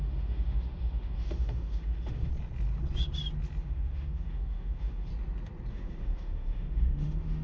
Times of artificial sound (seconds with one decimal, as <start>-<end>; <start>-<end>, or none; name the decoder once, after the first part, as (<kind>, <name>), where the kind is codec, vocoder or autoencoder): 0.0-2.3 (autoencoder, DAC-VAE); 3.6-5.1; 5.7-7.4